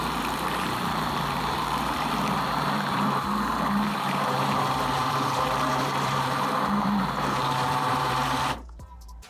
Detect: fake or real fake